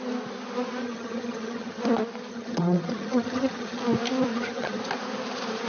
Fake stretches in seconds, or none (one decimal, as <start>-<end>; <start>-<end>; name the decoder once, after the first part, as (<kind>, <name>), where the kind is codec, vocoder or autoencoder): 0.8-1.8 (vocoder, HiFi-GAN); 2.3-3.8; 4.3-4.8